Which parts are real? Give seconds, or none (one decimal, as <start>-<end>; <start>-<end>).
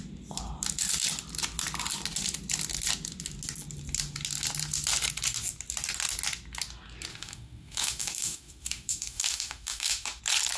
0.0-7.1; 10.2-10.6